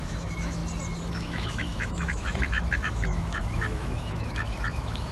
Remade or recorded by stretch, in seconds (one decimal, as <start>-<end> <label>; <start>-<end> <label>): 0.0-0.6 remade; 0.6-1.1 recorded; 1.1-5.1 remade